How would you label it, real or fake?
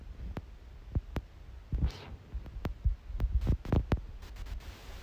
real